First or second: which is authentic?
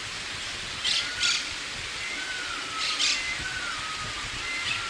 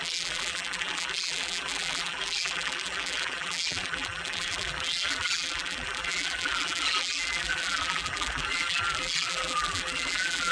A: first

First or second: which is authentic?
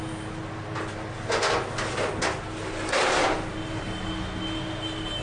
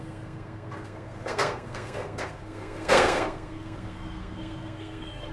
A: first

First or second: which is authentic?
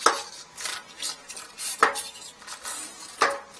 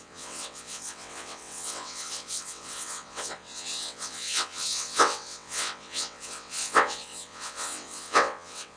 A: first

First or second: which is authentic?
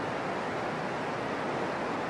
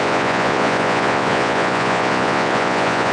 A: first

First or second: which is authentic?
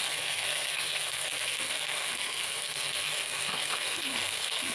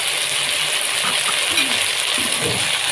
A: second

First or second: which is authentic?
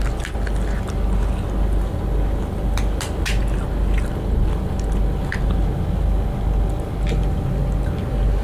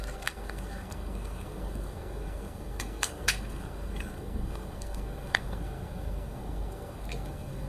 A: first